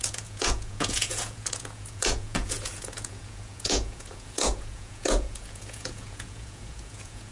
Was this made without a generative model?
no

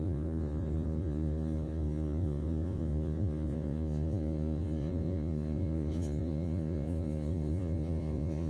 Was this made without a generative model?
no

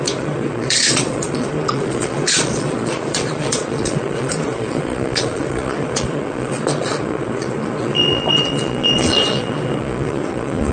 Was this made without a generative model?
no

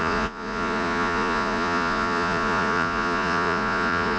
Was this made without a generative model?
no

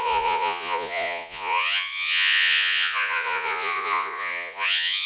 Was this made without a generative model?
no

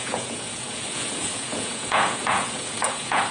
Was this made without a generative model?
no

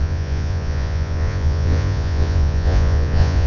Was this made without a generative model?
no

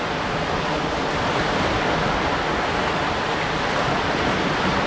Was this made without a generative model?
yes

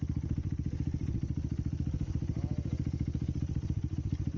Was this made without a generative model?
yes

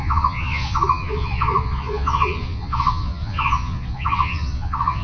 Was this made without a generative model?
no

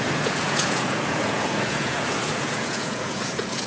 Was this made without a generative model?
no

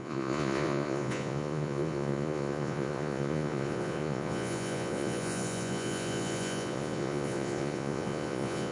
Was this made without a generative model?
no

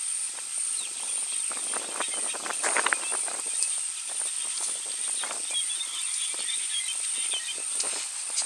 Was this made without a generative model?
yes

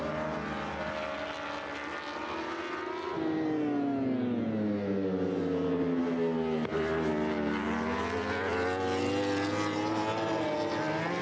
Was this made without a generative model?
yes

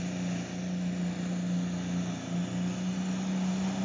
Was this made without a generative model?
yes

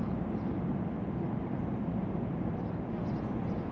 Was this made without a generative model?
yes